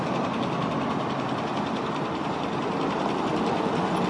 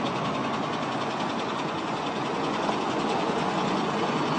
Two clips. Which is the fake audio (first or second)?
second